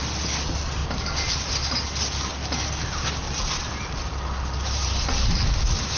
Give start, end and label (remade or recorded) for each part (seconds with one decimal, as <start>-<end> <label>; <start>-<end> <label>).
0.0-0.8 recorded; 0.8-1.5 remade; 1.5-4.6 recorded; 4.6-5.5 remade; 5.5-6.0 recorded